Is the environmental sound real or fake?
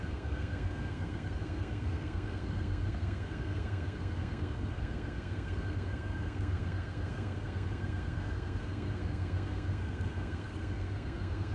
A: fake